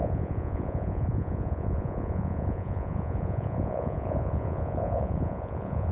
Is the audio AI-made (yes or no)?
yes